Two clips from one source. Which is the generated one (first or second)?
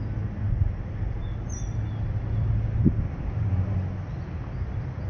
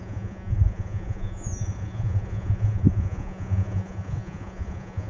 second